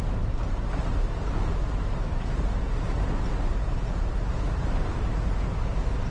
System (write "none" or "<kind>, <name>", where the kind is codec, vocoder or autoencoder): vocoder, BigVGAN v2